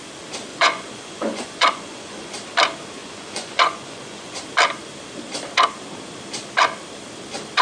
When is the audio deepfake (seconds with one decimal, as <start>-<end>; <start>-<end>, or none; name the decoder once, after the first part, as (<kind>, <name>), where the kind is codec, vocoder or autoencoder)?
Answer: 0.5-2.3 (vocoder, Vocos); 3.0-4.4